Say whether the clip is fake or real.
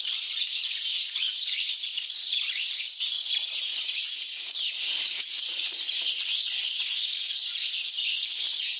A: fake